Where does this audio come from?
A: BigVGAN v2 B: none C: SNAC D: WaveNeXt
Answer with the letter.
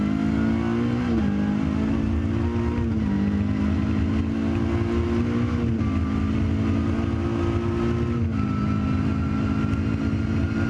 B